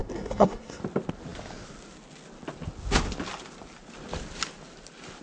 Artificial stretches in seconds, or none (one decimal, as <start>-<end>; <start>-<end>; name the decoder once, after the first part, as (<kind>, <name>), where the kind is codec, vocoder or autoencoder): 0.0-0.8 (codec, SNAC)